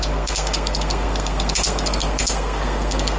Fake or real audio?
fake